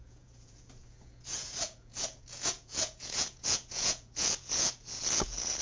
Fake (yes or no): yes